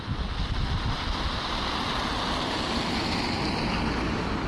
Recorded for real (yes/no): yes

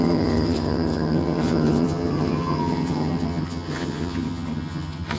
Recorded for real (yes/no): no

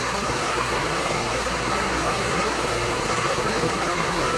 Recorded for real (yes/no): no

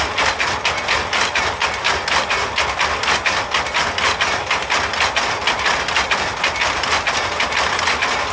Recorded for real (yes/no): yes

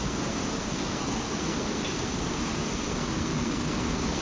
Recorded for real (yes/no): no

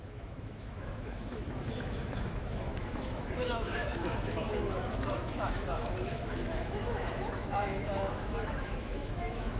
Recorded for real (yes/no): no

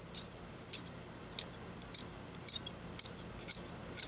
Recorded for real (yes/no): yes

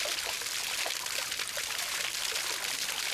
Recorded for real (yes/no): yes